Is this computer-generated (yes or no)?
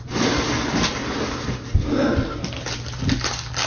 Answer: no